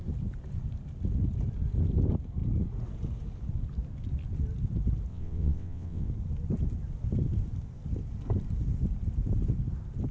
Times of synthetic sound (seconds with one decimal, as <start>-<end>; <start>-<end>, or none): 5.1-6.1